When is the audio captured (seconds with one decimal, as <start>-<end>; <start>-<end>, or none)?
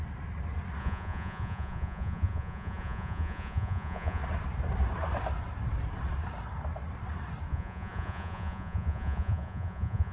0.0-0.8; 4.2-7.5